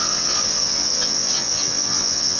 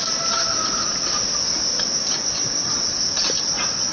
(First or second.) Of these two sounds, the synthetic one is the first